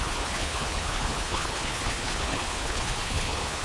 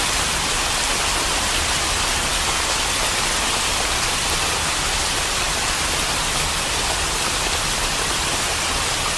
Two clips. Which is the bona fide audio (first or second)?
second